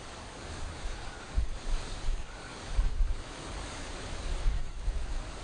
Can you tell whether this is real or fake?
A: fake